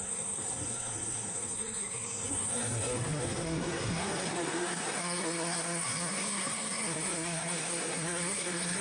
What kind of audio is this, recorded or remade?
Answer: remade